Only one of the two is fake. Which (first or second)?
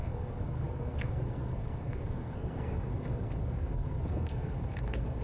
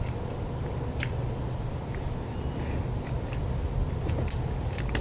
first